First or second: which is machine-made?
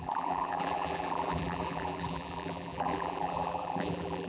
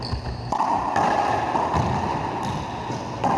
first